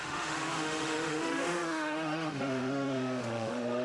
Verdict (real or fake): fake